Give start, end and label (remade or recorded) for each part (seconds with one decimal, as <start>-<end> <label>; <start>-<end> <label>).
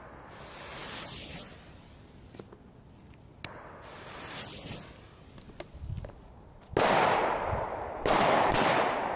0.0-9.2 recorded